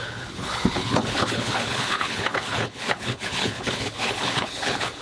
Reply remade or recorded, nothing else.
remade